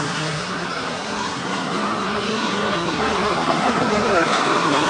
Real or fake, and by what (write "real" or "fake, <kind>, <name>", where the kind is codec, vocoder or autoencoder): fake, codec, SNAC